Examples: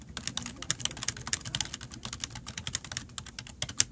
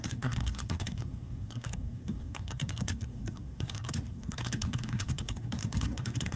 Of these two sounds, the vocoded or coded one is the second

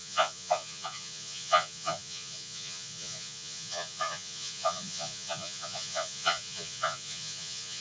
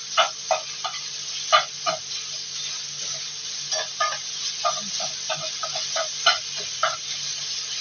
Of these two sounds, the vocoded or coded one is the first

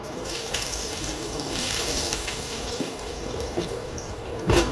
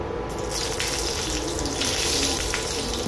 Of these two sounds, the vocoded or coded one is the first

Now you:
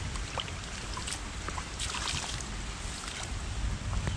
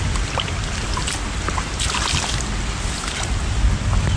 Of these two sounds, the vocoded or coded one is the first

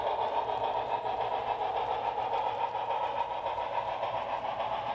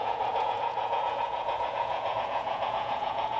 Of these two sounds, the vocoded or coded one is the second